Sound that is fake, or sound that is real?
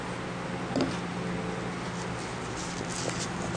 real